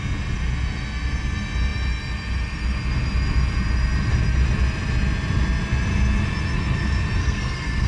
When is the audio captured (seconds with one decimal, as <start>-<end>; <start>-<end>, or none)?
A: 0.0-7.2